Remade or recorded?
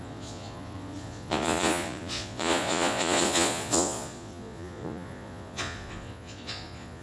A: remade